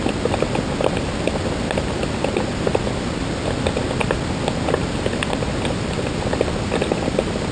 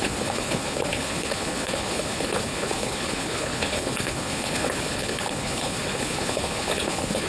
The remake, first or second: second